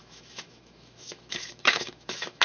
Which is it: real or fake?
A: fake